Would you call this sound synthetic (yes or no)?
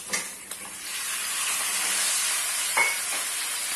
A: no